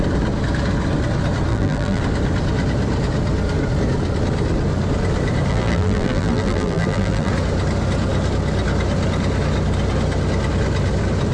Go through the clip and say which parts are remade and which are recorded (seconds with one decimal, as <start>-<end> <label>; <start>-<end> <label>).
0.0-1.5 recorded; 1.5-2.0 remade; 2.0-5.5 recorded; 5.5-7.3 remade; 7.3-11.3 recorded